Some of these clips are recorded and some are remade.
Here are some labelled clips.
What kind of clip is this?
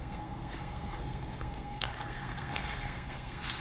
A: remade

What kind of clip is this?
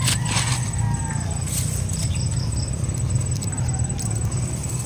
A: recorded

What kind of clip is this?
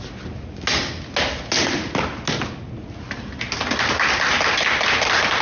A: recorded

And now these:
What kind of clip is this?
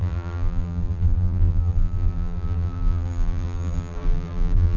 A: remade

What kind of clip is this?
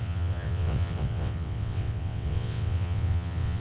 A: remade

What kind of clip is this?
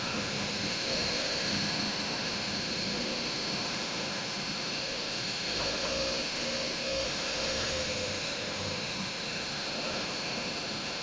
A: remade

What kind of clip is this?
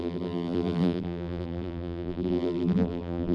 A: remade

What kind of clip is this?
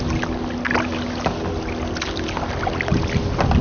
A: recorded